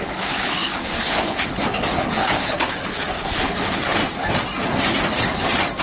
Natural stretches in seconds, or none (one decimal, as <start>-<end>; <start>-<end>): 4.0-5.8